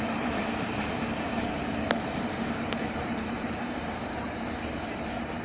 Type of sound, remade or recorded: remade